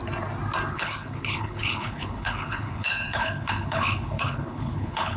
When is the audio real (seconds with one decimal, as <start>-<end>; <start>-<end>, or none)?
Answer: 0.0-0.7